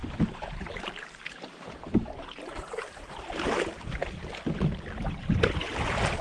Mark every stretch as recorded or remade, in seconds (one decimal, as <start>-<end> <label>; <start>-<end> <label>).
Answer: 0.0-6.2 recorded